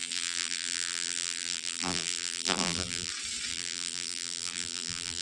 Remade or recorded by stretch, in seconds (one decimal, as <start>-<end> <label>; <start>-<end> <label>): 0.0-3.1 remade; 3.1-3.5 recorded; 3.5-5.2 remade